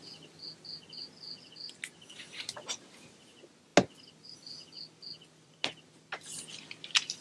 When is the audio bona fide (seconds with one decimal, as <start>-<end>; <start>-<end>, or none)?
0.0-7.2